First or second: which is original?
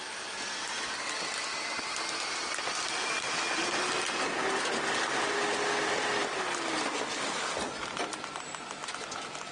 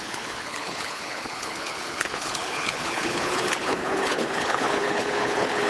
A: first